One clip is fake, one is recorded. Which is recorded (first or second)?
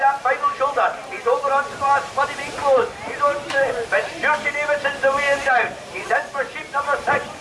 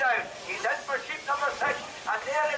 second